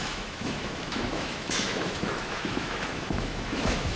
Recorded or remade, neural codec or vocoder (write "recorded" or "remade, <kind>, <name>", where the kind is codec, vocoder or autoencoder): remade, autoencoder, DAC-VAE